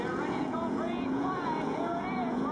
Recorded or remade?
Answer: remade